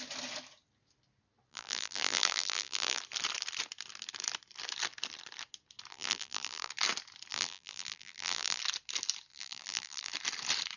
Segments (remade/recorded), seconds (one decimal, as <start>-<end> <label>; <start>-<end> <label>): 0.0-1.5 recorded; 1.5-3.0 remade; 3.0-5.9 recorded; 5.9-6.7 remade; 6.7-7.3 recorded; 7.3-8.6 remade; 8.6-9.3 recorded; 9.3-10.1 remade; 10.1-10.8 recorded